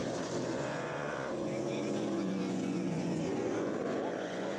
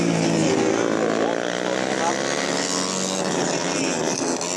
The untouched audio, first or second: second